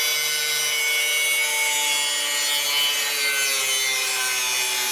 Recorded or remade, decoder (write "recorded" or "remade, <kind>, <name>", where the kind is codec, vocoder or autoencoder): recorded